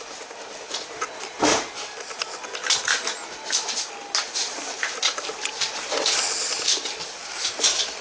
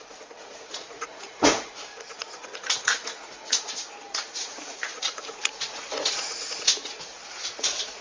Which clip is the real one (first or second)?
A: first